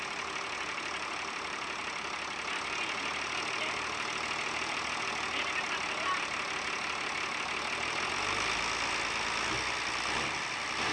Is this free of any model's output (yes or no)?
yes